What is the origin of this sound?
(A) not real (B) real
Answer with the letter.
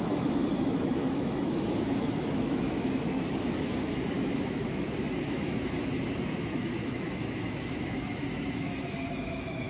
A